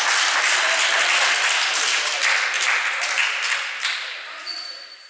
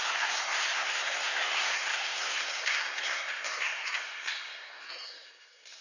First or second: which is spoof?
second